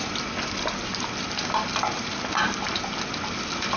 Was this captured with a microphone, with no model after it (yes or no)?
yes